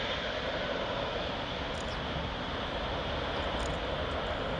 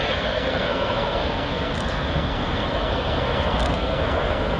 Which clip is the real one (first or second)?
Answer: first